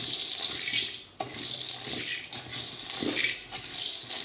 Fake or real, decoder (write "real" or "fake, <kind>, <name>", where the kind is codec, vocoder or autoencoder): real